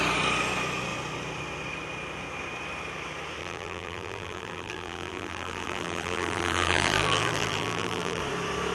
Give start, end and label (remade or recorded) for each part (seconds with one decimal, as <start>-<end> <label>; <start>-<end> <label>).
0.0-3.4 recorded; 3.4-8.2 remade; 8.2-8.7 recorded